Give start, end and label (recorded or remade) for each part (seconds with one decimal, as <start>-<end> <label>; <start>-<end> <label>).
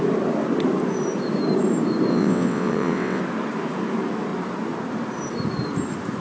0.0-2.1 recorded; 2.1-3.2 remade; 3.2-6.2 recorded